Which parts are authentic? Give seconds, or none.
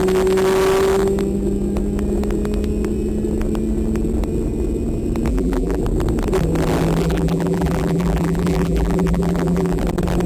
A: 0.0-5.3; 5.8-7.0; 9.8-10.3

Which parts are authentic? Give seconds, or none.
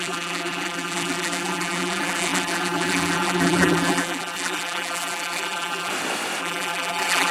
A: 5.9-6.4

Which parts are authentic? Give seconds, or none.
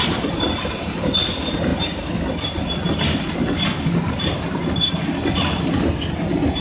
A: 0.0-6.6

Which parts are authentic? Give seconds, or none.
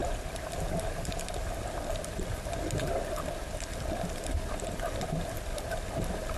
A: 0.0-6.4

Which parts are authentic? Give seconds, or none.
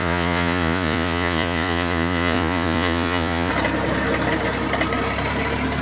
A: 3.5-5.8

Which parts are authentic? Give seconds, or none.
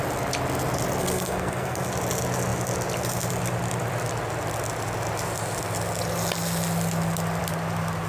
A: 0.0-1.0; 1.9-8.1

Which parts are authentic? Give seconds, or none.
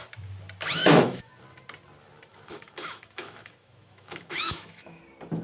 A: 0.0-0.8; 1.4-2.3; 5.0-5.4